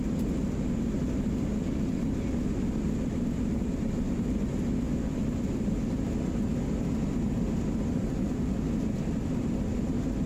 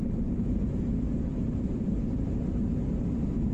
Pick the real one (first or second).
first